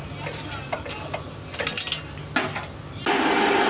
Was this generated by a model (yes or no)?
no